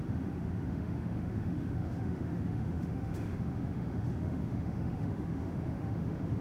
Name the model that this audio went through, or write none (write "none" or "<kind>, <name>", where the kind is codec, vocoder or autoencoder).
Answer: autoencoder, DAC-VAE